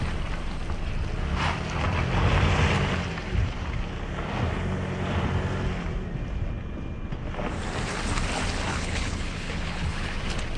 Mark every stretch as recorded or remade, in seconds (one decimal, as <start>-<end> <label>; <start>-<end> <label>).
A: 0.0-8.7 recorded; 8.7-10.2 remade; 10.2-10.6 recorded